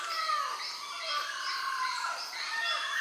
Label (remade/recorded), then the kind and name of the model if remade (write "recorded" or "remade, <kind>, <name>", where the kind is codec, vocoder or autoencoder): recorded